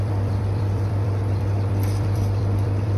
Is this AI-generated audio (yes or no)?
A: yes